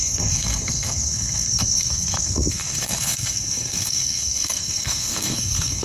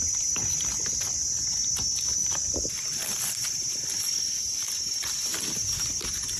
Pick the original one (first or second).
second